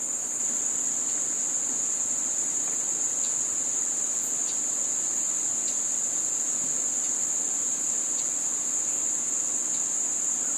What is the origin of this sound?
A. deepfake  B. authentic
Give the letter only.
B